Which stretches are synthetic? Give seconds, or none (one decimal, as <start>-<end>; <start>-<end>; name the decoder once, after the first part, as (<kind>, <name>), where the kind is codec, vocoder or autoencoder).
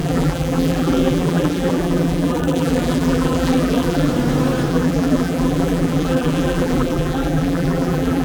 0.0-4.1 (vocoder, BigVGAN v2); 4.7-8.2